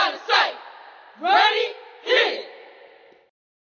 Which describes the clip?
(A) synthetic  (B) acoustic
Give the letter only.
B